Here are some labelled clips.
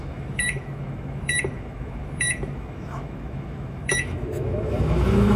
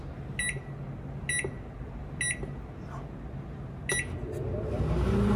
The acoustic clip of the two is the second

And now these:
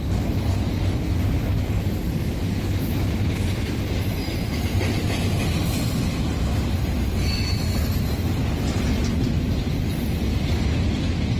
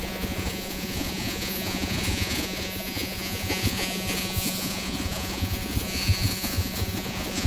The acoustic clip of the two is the first